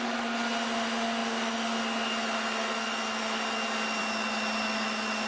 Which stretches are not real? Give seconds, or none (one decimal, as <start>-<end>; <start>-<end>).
none